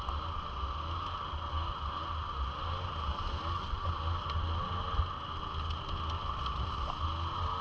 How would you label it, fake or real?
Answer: real